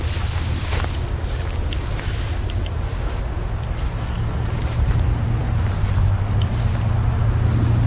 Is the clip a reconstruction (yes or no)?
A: no